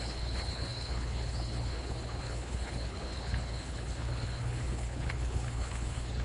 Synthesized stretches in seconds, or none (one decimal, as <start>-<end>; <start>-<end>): 0.0-6.2